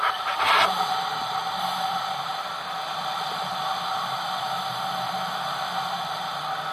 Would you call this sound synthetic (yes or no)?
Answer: no